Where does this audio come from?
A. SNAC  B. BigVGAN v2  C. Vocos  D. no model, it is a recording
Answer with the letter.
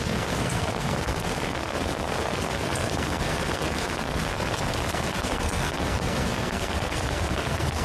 A